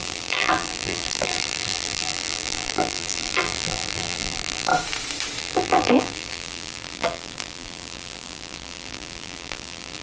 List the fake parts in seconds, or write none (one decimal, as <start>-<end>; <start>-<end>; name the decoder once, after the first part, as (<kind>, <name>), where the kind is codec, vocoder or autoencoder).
0.0-4.7 (vocoder, BigVGAN v2); 5.4-10.0